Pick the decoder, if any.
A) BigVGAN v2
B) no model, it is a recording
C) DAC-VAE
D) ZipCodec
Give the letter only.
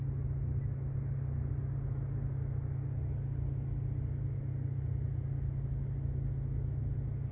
B